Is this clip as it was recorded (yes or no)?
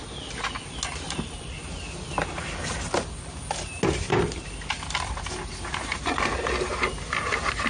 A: yes